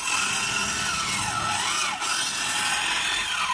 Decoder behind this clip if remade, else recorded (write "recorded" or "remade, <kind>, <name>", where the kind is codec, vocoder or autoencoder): recorded